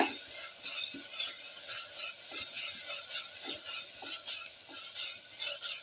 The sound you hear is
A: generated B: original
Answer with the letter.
B